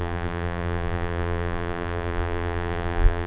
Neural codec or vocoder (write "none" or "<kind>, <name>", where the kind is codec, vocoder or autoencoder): vocoder, BigVGAN v2